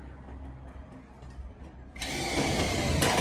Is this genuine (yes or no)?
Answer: yes